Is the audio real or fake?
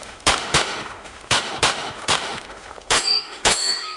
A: fake